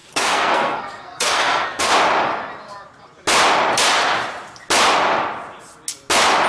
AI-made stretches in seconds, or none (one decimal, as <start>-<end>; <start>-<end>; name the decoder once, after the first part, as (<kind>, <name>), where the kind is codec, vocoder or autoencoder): 0.0-1.9 (codec, SNAC)